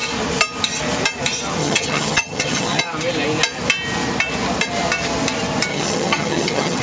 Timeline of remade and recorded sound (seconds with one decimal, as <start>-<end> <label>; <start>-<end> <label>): 0.0-1.6 recorded; 1.6-2.8 remade; 2.8-5.7 recorded; 5.7-6.8 remade